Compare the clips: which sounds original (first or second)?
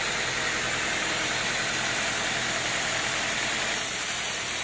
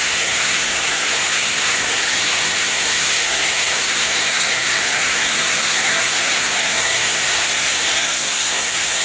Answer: first